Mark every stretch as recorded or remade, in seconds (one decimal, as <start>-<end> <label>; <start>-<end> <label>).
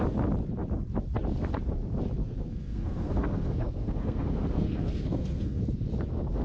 0.0-2.2 recorded; 2.2-5.6 remade; 5.6-6.4 recorded